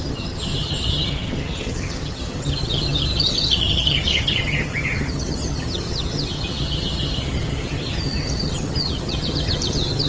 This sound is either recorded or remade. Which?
remade